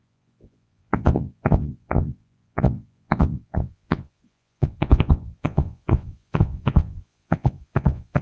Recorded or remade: remade